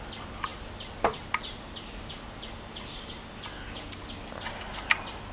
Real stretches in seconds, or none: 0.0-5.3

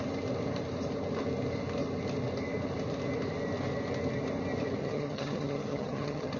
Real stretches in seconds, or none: 0.0-4.8